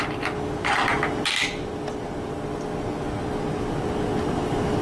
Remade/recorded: recorded